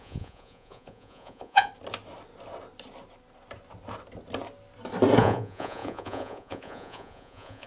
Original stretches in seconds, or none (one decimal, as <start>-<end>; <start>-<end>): 1.7-5.2